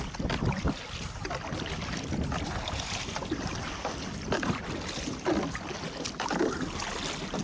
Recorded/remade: recorded